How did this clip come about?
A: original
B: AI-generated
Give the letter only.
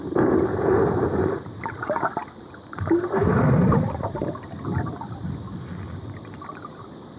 A